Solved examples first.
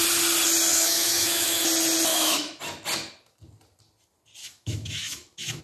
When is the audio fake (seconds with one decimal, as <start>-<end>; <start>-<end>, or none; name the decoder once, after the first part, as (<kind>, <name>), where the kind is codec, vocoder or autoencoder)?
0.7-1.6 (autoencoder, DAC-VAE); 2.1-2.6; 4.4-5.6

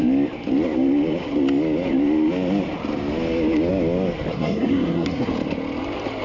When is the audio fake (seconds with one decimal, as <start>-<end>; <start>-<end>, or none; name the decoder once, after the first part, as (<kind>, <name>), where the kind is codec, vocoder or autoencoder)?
4.3-5.3 (codec, SNAC)

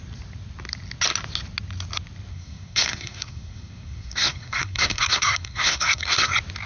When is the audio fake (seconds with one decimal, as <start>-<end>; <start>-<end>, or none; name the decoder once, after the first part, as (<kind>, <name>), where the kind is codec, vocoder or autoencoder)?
2.3-6.3 (codec, SNAC)